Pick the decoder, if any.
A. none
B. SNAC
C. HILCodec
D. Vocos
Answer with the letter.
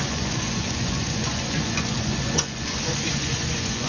D